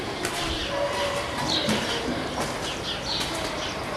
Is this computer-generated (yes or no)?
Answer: no